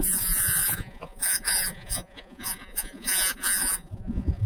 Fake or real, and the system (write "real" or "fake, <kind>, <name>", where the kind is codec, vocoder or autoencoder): fake, vocoder, Vocos